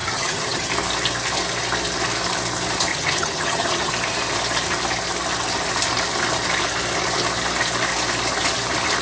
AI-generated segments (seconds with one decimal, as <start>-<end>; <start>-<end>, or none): 0.0-0.7; 2.9-3.9